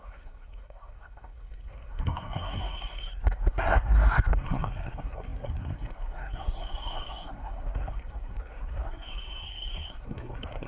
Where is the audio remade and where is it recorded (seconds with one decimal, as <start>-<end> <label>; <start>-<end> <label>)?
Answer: 0.0-10.7 remade